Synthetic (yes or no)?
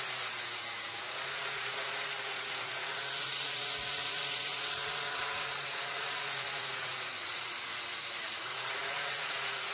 yes